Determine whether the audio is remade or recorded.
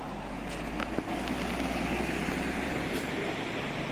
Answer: recorded